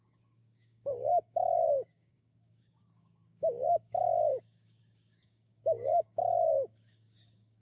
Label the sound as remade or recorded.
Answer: remade